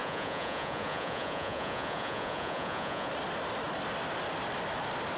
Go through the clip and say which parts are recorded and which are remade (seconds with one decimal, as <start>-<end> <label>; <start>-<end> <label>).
0.0-3.1 remade; 3.1-5.2 recorded